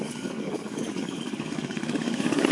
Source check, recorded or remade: remade